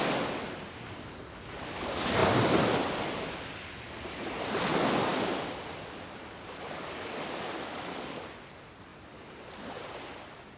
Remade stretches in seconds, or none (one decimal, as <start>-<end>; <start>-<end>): none